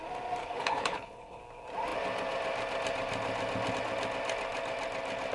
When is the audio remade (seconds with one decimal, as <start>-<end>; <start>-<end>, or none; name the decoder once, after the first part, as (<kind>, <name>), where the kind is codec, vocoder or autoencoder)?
0.4-1.4 (codec, HILCodec)